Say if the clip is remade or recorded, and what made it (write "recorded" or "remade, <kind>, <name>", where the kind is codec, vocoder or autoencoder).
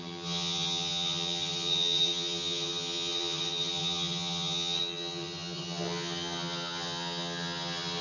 remade, vocoder, HiFi-GAN